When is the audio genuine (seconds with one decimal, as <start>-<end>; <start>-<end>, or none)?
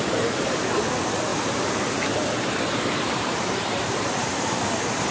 0.0-1.3; 4.4-5.1